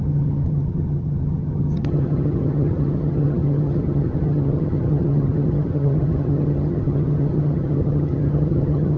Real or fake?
fake